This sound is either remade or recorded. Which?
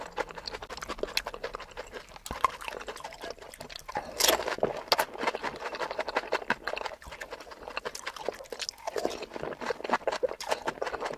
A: recorded